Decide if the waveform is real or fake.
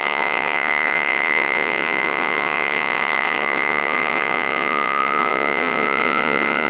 fake